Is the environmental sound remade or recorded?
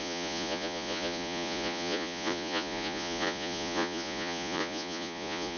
remade